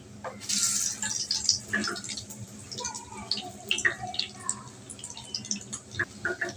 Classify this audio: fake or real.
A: real